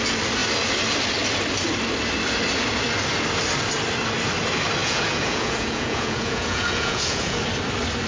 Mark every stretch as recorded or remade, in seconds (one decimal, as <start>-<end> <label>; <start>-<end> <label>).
0.0-4.8 recorded; 4.8-7.4 remade; 7.4-8.1 recorded